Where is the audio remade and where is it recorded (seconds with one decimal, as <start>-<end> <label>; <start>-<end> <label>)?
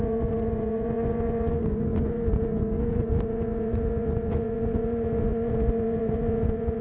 0.0-6.8 remade